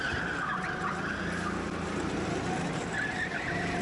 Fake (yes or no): no